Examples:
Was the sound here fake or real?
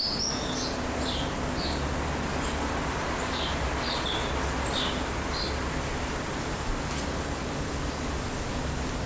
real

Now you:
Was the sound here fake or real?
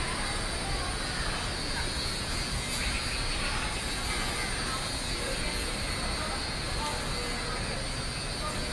real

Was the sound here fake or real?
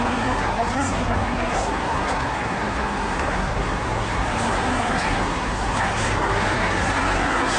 fake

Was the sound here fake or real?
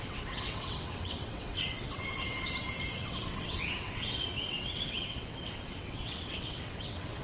fake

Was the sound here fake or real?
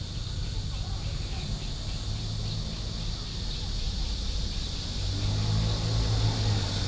real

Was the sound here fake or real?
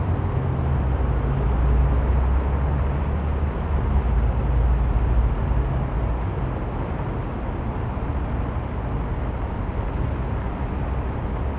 real